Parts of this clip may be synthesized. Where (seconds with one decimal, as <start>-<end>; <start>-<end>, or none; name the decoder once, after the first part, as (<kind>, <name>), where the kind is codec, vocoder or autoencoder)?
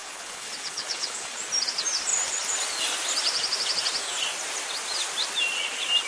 0.0-1.4 (codec, HILCodec)